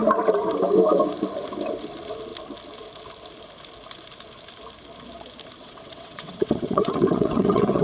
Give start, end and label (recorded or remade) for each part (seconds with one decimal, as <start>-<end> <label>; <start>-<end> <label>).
0.0-5.6 recorded; 5.6-7.8 remade